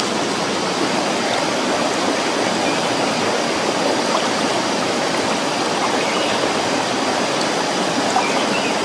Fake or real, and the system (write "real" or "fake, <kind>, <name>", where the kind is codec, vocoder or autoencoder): real